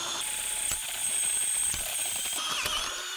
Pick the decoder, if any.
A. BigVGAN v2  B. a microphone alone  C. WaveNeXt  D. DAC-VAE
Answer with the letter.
A